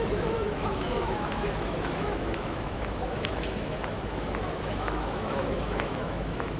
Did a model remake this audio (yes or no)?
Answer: yes